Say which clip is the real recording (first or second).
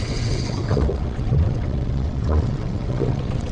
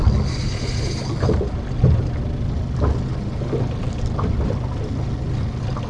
second